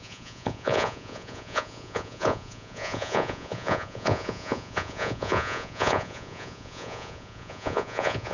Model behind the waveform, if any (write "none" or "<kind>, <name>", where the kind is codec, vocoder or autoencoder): vocoder, Vocos